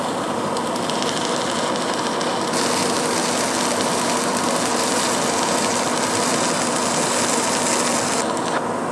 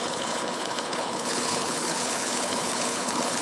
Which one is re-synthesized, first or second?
second